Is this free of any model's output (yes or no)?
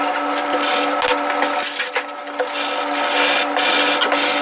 yes